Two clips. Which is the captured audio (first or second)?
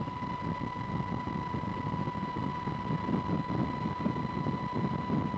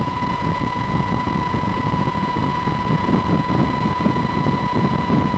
first